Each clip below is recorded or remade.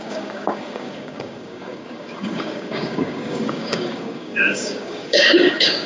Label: remade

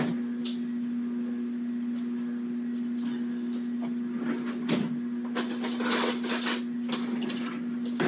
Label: recorded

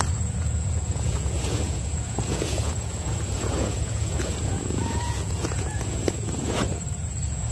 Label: remade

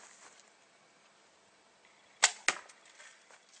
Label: recorded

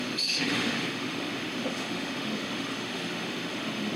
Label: remade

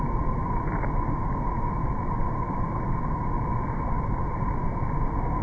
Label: recorded